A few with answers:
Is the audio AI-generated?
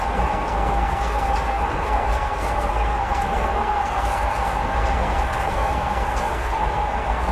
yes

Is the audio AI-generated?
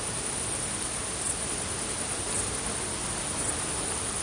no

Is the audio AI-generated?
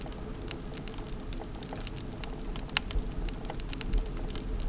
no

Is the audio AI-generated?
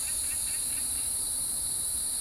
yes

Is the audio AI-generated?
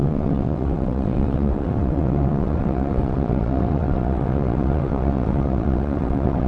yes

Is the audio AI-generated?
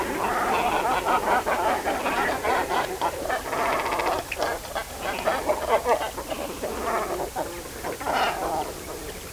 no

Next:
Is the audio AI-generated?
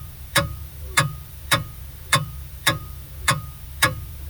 yes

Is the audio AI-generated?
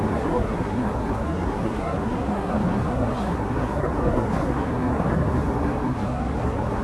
yes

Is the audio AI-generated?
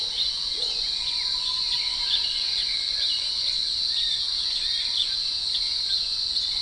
yes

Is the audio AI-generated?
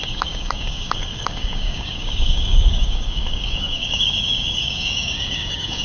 yes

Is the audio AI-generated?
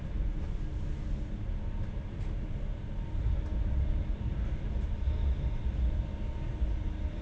no